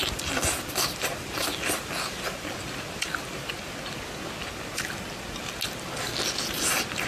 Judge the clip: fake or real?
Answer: real